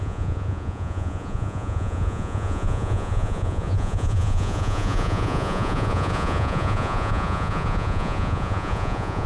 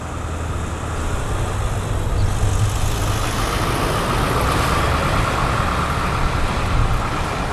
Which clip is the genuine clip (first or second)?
second